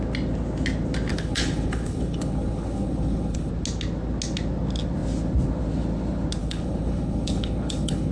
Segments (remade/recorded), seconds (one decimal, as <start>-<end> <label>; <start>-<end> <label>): 0.0-1.1 recorded; 1.1-3.5 remade; 3.5-6.4 recorded; 6.4-8.1 remade